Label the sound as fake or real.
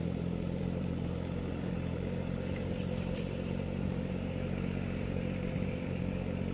fake